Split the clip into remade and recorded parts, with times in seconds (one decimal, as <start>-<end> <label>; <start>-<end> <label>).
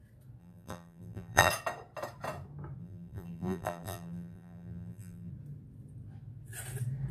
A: 0.0-0.4 recorded; 0.4-1.5 remade; 1.5-2.8 recorded; 2.8-5.3 remade; 5.3-7.1 recorded